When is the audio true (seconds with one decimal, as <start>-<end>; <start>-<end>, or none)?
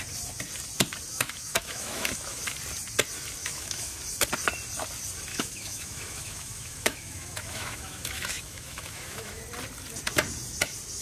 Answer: 0.0-1.1; 2.4-3.4; 4.0-5.3; 9.4-11.0